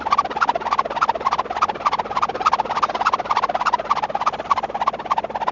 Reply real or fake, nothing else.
real